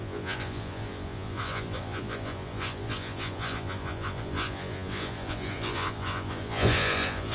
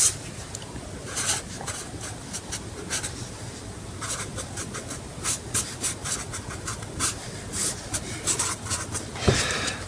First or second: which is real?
second